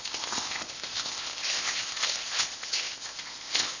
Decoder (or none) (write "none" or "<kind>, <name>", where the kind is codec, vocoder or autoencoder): codec, ZipCodec